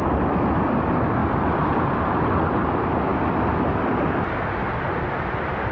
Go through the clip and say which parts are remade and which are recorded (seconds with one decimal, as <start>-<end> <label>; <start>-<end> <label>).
0.0-5.7 recorded